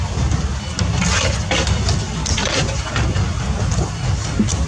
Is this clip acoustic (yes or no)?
yes